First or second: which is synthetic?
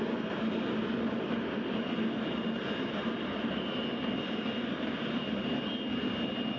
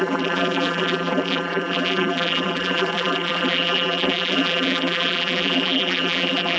second